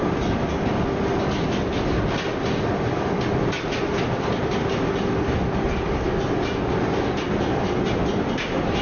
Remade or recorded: recorded